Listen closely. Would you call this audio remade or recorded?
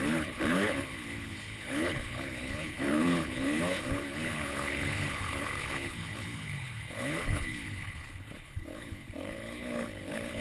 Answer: remade